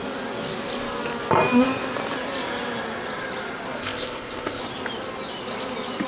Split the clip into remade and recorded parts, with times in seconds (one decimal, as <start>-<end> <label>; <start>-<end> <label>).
0.0-3.8 recorded; 3.8-4.6 remade; 4.6-6.1 recorded